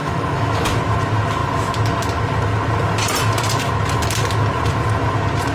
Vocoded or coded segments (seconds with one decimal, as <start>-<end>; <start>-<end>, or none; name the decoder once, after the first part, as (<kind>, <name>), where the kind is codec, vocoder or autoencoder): 0.0-0.8 (autoencoder, DAC-VAE)